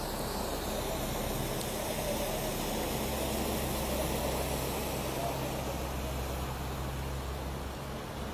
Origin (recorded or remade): recorded